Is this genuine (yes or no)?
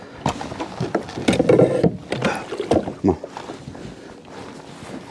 yes